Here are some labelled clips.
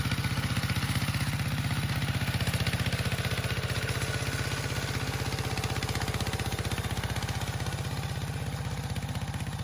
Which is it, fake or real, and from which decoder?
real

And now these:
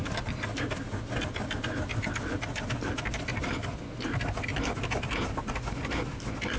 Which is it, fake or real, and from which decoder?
real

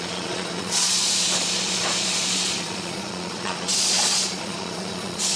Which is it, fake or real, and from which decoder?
fake, vocoder, Vocos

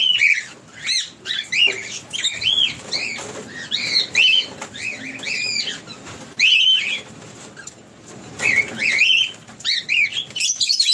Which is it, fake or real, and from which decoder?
real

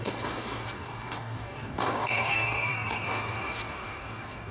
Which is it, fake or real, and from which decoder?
fake, codec, DAC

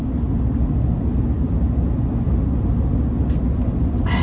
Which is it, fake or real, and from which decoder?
real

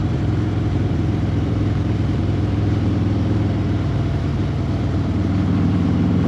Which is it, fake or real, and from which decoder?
fake, vocoder, BigVGAN v2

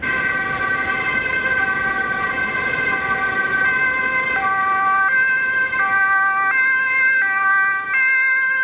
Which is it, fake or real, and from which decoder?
real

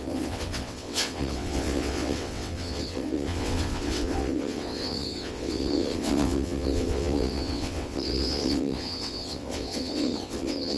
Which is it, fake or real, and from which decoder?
fake, vocoder, WaveNeXt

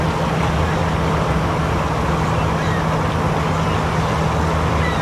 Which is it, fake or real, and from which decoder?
real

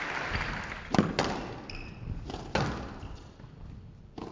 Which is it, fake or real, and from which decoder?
real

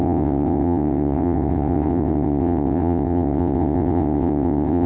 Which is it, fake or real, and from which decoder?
fake, vocoder, WaveNeXt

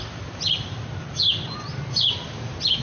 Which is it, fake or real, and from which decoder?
real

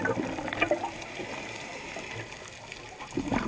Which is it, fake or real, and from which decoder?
real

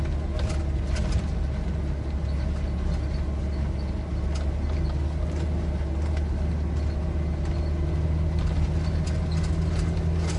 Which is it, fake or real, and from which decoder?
real